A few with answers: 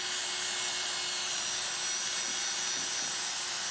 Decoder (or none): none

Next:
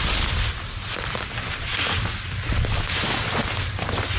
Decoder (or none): none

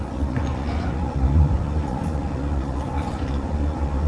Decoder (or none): vocoder, Vocos